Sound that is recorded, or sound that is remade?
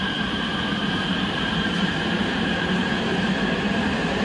remade